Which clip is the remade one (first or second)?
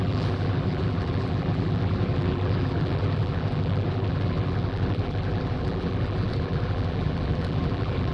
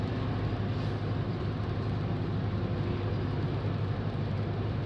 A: first